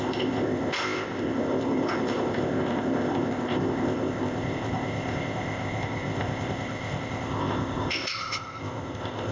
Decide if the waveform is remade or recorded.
remade